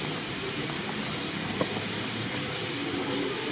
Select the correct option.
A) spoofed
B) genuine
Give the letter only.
B